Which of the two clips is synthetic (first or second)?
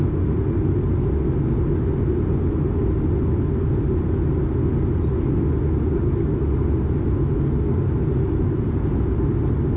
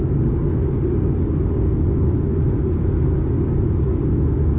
second